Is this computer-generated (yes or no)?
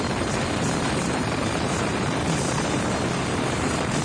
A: yes